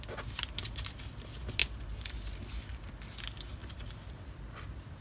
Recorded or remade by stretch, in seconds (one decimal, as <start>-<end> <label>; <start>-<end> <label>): 0.0-1.6 recorded; 1.6-2.9 remade; 2.9-3.6 recorded; 3.6-5.0 remade